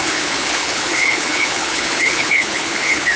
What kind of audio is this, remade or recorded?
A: remade